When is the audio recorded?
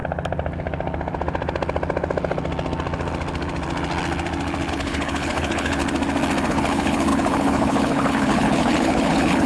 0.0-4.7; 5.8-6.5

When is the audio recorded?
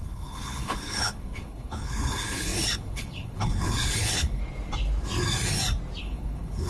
4.4-6.0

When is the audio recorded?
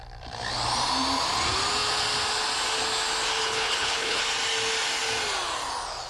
0.0-3.4; 4.2-6.1